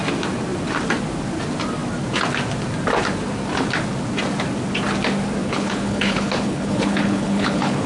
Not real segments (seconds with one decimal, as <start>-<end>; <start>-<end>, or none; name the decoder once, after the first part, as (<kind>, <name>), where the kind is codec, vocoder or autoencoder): 5.4-7.9 (codec, HILCodec)